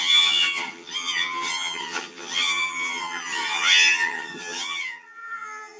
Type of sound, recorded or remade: remade